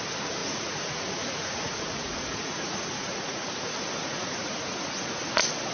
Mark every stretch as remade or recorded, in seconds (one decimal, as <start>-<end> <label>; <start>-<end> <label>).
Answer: 0.0-0.4 recorded; 0.4-3.5 remade; 3.5-4.0 recorded; 4.0-5.2 remade; 5.2-5.7 recorded